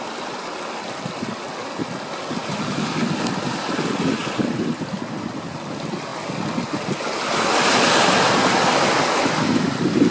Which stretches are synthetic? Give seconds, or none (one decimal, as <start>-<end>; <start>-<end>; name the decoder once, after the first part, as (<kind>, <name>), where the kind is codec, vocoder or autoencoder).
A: none